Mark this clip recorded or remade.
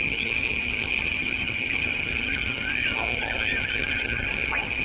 remade